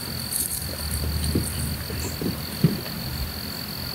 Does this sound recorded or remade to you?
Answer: remade